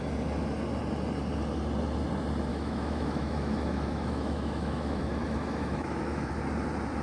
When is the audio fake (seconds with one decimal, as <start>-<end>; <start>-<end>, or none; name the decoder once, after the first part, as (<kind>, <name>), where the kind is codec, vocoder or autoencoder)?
2.5-6.3 (autoencoder, DAC-VAE)